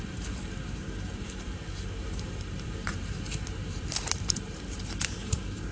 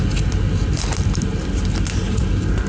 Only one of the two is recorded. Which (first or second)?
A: second